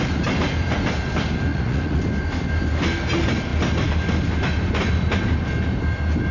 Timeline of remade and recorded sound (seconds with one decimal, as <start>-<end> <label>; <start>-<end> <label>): 0.0-1.5 recorded; 1.5-2.0 remade; 2.0-6.3 recorded